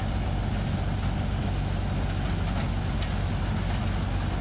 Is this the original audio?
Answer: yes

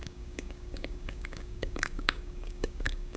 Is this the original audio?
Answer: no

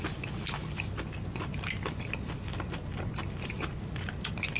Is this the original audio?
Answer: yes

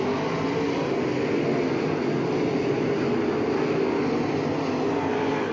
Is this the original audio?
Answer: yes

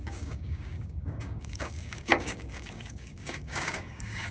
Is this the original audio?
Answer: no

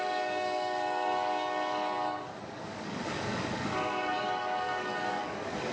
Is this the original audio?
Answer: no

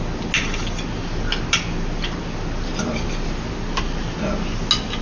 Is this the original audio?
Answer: yes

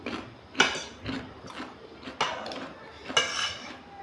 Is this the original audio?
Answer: yes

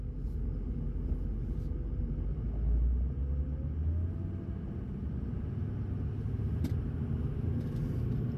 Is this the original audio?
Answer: yes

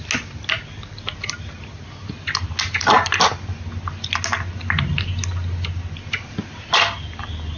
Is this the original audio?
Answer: yes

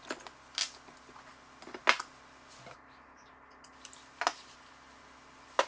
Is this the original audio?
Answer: yes